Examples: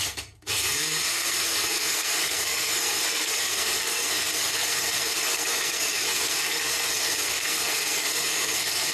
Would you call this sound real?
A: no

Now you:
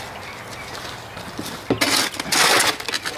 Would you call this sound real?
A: yes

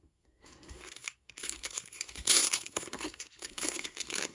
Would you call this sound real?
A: no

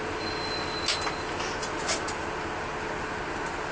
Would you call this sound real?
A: yes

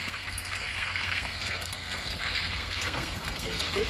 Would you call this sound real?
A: no